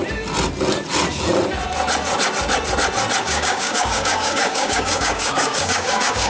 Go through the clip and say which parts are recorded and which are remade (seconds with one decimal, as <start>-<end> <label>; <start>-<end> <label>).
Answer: 0.0-3.2 recorded; 3.2-6.3 remade